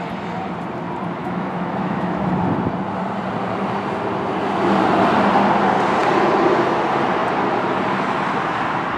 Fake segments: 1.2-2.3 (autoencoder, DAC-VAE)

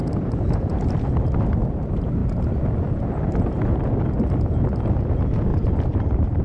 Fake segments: 5.5-6.4 (vocoder, BigVGAN v2)

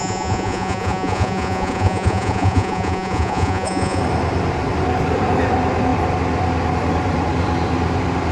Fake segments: 0.0-4.0 (vocoder, Vocos)

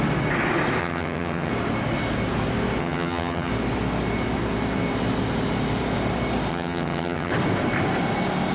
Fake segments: 0.8-1.5 (vocoder, HiFi-GAN); 2.8-3.5; 6.5-7.3

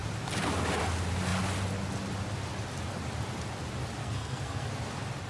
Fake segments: 4.0-4.7 (codec, SNAC)